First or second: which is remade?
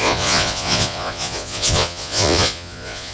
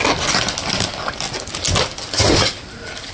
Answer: first